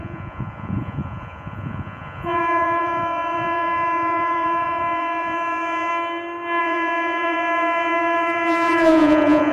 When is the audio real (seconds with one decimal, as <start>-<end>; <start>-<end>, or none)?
5.9-6.6